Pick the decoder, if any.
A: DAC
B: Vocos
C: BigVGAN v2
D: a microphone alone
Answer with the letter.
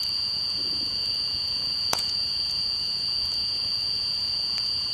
B